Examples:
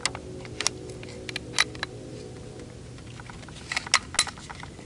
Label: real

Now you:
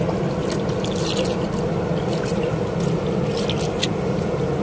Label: real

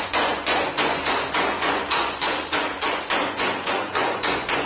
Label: fake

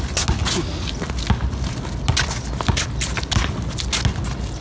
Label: real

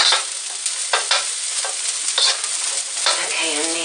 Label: real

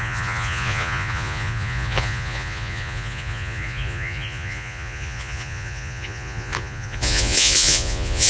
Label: fake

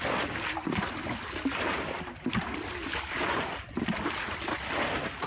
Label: real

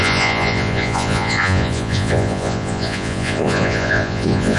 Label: fake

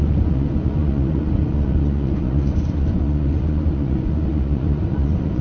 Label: fake